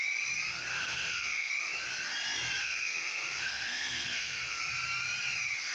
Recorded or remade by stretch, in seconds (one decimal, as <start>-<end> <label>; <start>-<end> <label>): 0.0-0.7 recorded; 0.7-1.5 remade; 1.5-2.6 recorded; 2.6-4.6 remade; 4.6-5.7 recorded